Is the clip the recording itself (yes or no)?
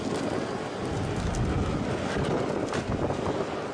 yes